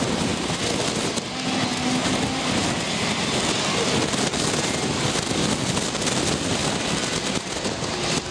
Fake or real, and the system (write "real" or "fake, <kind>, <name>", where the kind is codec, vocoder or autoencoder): real